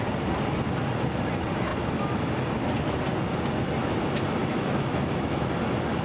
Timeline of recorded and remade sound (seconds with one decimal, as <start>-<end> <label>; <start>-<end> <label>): 0.0-4.4 recorded; 4.4-5.5 remade; 5.5-6.0 recorded